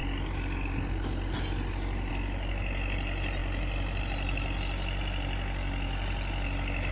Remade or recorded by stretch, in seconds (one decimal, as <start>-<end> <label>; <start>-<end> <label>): 0.0-6.9 recorded